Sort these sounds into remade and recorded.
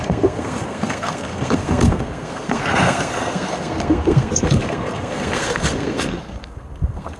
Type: remade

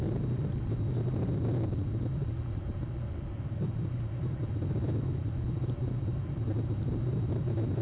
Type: recorded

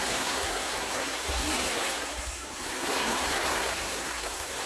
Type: remade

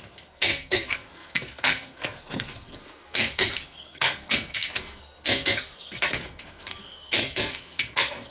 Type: remade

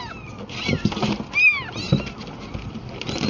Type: recorded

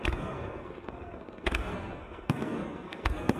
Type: remade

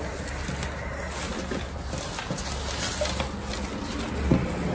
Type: recorded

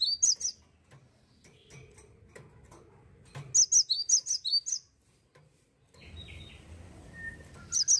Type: recorded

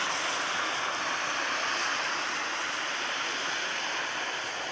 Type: recorded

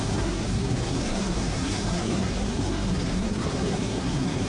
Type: remade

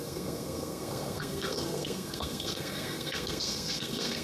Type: remade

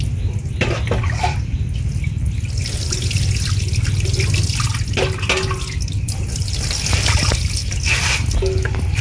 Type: recorded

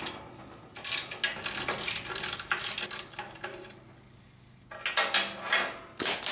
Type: recorded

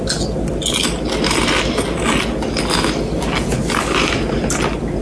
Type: recorded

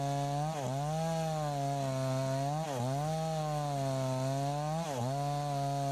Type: recorded